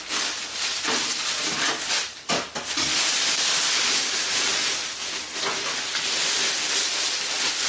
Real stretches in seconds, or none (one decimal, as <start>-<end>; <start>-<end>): 0.0-0.7; 4.1-4.8; 5.7-7.7